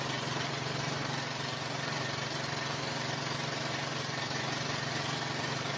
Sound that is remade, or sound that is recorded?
remade